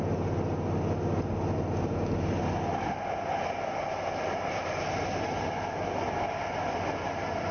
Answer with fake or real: real